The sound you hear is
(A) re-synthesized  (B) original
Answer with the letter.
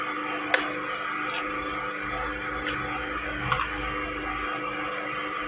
B